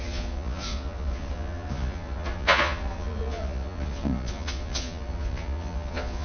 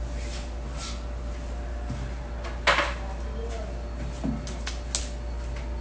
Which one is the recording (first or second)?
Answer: second